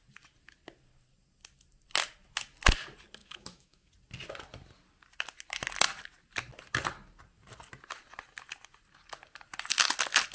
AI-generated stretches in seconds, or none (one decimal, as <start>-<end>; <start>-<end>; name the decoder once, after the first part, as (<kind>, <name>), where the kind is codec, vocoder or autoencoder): 3.2-3.9 (autoencoder, DAC-VAE)